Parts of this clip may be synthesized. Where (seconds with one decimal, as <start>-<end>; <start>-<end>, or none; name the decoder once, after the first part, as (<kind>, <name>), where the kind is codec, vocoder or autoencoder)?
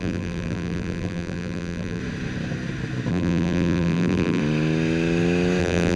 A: 0.0-2.0 (vocoder, BigVGAN v2); 3.1-4.4; 5.6-6.0